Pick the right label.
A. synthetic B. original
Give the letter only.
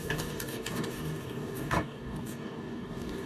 A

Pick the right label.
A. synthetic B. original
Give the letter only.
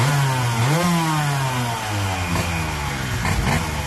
B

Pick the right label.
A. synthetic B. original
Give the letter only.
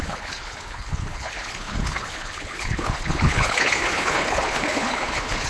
A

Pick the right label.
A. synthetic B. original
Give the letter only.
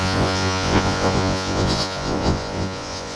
A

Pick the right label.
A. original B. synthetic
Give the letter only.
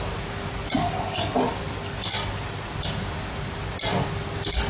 A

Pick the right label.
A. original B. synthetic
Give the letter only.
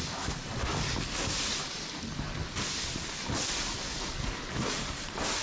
A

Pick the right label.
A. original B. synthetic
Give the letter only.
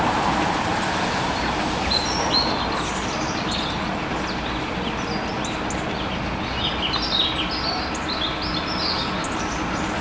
A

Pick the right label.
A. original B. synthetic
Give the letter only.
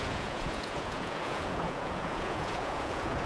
B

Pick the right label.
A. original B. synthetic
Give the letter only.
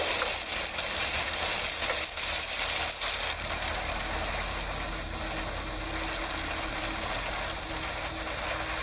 A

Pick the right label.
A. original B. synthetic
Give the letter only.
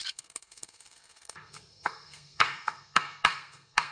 B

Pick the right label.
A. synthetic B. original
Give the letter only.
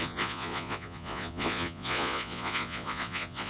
A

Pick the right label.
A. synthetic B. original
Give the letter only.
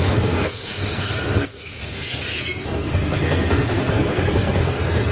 A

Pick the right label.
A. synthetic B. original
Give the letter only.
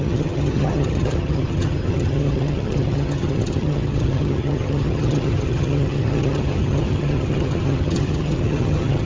A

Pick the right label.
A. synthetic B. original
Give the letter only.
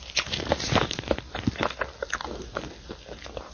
B